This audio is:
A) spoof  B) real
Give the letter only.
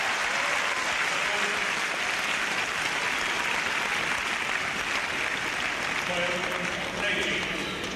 B